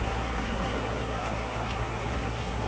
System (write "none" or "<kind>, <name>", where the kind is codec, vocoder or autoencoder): codec, SNAC